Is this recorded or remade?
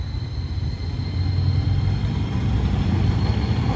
recorded